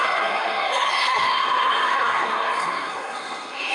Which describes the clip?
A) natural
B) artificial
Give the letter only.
B